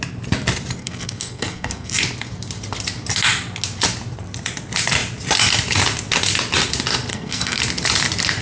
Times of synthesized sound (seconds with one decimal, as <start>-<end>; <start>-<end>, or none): 0.8-1.9; 7.1-7.6